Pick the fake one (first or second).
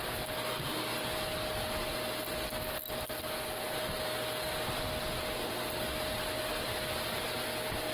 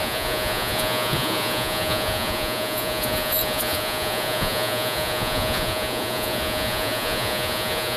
second